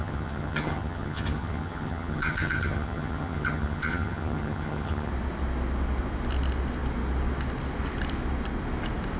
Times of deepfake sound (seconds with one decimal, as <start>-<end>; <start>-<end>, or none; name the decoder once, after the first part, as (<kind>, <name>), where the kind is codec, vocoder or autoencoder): 0.0-5.1 (vocoder, HiFi-GAN)